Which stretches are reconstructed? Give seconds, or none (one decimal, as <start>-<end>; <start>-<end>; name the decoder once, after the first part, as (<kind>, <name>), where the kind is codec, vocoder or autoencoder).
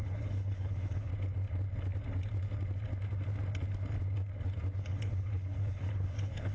0.0-1.1 (codec, HILCodec); 4.9-6.5